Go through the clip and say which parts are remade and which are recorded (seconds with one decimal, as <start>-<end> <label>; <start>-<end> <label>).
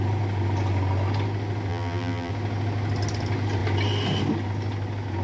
0.0-1.7 recorded; 1.7-2.3 remade; 2.3-5.2 recorded